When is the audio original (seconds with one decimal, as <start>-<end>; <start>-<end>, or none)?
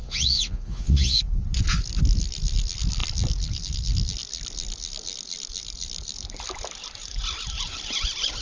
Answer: 1.2-8.4